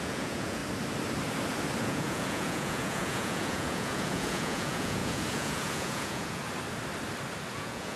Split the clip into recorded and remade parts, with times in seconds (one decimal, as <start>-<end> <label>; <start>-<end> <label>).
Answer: 0.0-0.6 remade; 0.6-1.8 recorded; 1.8-6.4 remade; 6.4-7.5 recorded; 7.5-8.0 remade